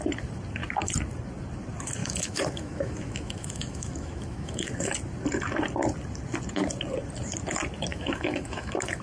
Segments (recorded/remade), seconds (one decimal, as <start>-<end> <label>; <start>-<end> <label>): 0.0-2.0 recorded; 2.0-4.9 remade; 4.9-7.9 recorded; 7.9-9.0 remade